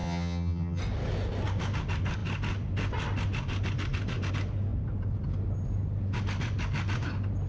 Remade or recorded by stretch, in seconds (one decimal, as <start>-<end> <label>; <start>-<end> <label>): 0.0-0.8 remade; 0.8-7.5 recorded